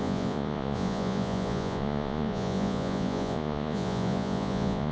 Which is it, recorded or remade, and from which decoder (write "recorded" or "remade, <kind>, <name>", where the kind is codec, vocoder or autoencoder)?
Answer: remade, vocoder, Vocos